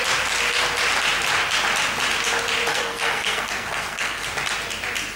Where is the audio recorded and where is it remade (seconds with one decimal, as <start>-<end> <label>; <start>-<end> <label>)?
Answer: 0.0-2.7 recorded; 2.7-4.3 remade; 4.3-5.2 recorded